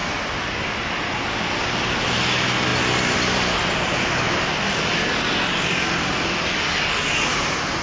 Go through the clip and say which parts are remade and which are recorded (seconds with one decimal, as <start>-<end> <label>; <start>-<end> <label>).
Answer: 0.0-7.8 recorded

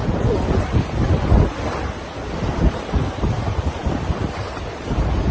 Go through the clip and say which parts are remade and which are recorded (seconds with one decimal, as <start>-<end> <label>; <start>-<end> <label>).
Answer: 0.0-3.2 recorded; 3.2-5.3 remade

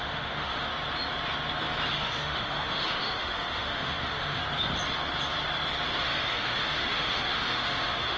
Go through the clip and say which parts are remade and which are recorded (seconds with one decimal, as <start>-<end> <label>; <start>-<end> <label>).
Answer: 0.0-0.7 remade; 0.7-1.9 recorded; 1.9-4.4 remade; 4.4-6.0 recorded; 6.0-8.2 remade

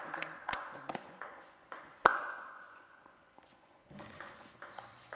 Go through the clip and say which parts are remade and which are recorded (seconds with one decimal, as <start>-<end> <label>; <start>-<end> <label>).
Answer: 0.0-5.2 remade

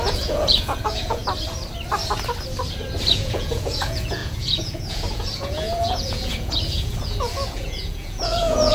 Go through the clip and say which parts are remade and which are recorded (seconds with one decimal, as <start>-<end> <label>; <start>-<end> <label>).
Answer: 0.0-1.2 remade; 1.2-3.1 recorded; 3.1-8.7 remade

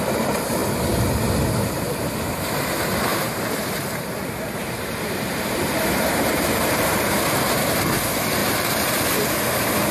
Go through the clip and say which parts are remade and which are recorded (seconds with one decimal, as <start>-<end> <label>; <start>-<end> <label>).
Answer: 0.0-3.1 recorded; 3.1-7.7 remade; 7.7-8.4 recorded; 8.4-9.3 remade; 9.3-9.9 recorded